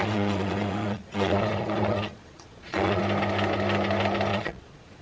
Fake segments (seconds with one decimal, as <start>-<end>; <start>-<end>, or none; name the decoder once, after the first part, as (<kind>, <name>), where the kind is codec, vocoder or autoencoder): 0.0-3.0 (vocoder, Vocos); 4.3-5.0